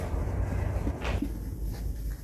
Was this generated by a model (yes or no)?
no